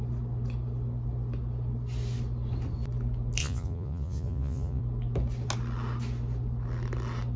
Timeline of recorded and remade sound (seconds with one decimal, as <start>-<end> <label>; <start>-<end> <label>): 0.0-3.4 recorded; 3.4-4.8 remade; 4.8-7.4 recorded